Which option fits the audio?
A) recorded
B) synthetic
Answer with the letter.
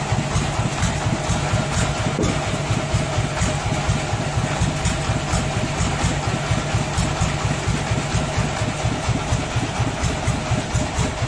A